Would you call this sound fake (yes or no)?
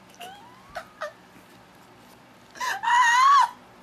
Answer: no